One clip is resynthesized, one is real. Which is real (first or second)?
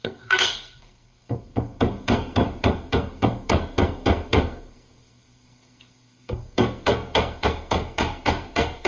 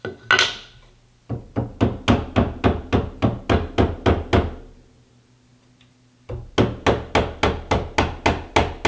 second